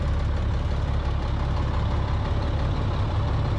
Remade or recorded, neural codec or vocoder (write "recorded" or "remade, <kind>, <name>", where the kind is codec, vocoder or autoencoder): recorded